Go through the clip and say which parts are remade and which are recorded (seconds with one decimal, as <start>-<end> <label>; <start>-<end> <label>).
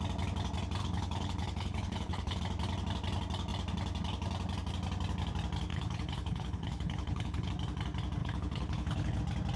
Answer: 0.0-0.8 recorded; 0.8-2.4 remade; 2.4-5.7 recorded; 5.7-7.5 remade; 7.5-8.2 recorded; 8.2-9.2 remade; 9.2-9.6 recorded